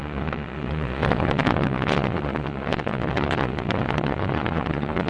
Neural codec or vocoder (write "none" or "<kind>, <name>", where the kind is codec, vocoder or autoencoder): vocoder, Vocos